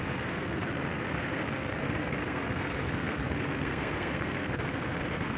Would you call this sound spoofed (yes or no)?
yes